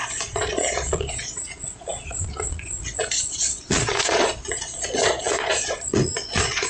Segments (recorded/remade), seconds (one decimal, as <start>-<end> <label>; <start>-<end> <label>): 0.0-6.7 remade